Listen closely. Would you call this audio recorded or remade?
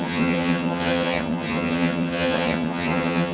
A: remade